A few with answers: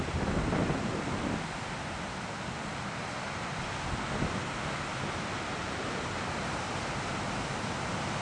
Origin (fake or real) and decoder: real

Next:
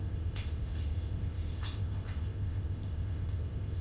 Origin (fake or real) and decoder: fake, codec, ZipCodec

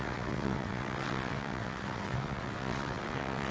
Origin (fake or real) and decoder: fake, vocoder, WaveNeXt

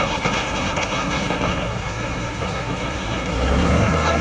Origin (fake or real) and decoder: fake, codec, SNAC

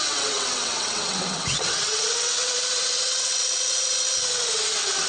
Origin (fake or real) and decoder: fake, vocoder, WaveNeXt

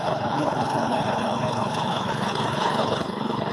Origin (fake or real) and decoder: fake, codec, HILCodec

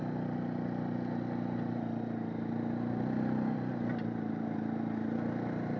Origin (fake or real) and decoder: real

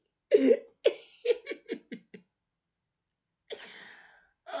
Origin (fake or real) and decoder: real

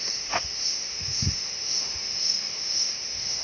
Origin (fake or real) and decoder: fake, autoencoder, DAC-VAE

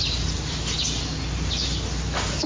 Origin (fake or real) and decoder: real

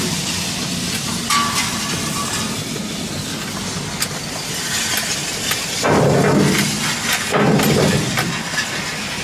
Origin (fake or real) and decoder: real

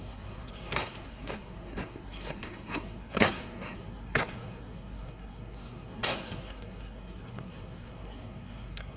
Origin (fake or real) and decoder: fake, codec, SNAC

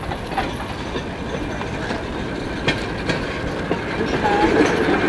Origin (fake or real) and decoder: real